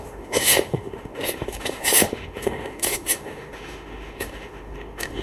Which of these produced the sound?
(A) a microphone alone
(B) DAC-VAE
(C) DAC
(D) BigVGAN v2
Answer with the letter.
B